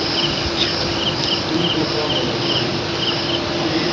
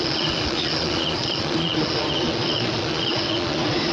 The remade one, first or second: second